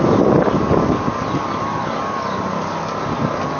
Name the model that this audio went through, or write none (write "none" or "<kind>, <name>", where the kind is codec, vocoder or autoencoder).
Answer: none